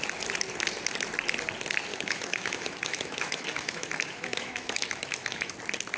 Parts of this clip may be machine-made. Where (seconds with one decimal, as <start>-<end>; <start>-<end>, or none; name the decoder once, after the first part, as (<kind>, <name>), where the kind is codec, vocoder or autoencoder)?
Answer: 1.9-5.5 (autoencoder, DAC-VAE)

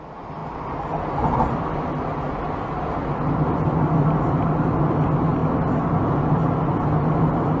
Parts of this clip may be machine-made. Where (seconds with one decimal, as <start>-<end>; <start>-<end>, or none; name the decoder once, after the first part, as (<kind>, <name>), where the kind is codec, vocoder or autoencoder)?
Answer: none

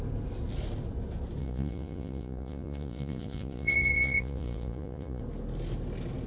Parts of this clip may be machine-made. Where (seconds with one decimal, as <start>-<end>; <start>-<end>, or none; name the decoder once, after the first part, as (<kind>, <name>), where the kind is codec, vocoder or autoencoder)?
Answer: 1.4-5.2 (vocoder, Vocos)